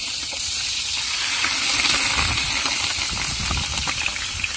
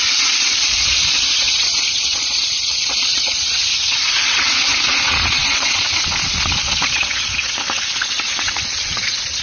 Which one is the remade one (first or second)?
second